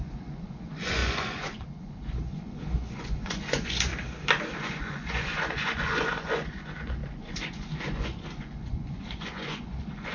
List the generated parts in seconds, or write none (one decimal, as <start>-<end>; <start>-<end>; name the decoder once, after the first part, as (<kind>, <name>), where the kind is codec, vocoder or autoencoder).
0.0-3.9 (vocoder, Vocos); 4.6-10.1

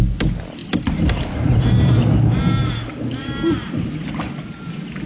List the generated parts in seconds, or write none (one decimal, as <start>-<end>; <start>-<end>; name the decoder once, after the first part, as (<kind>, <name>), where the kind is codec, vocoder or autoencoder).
none

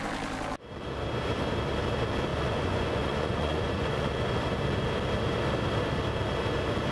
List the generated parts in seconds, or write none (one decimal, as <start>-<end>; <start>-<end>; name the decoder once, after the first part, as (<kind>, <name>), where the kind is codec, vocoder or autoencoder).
2.3-4.3 (vocoder, Vocos)

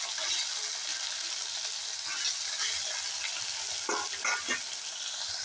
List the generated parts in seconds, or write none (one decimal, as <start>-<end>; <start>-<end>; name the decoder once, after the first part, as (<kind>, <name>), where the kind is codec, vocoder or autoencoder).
none

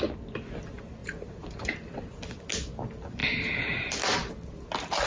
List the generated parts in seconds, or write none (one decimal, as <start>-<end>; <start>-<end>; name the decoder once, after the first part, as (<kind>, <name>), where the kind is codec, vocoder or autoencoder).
none

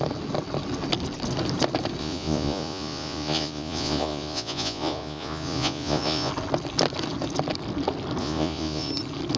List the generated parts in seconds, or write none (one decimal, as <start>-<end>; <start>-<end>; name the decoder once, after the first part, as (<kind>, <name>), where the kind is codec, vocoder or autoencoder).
2.0-6.3 (vocoder, Vocos); 8.2-8.9

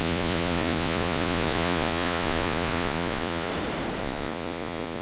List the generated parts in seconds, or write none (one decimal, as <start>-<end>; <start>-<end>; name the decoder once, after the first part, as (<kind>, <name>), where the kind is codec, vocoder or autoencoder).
0.0-3.5 (vocoder, Vocos); 4.0-5.0